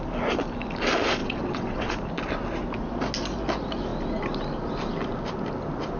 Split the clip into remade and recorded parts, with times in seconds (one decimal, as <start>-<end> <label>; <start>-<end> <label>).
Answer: 0.0-1.2 recorded; 1.2-1.9 remade; 1.9-6.0 recorded